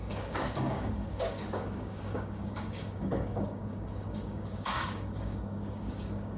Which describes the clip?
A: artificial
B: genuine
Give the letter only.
A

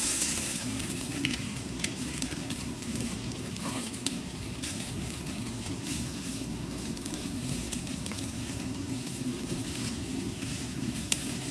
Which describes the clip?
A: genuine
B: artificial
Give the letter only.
B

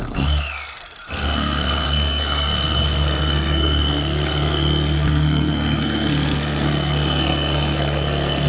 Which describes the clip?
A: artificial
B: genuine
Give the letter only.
A